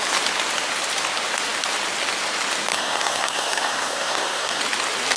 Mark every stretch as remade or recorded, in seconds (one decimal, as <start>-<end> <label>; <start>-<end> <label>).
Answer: 0.0-2.7 recorded; 2.7-4.6 remade; 4.6-5.2 recorded